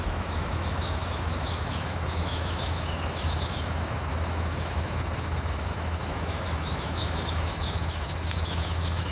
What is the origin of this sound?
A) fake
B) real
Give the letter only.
A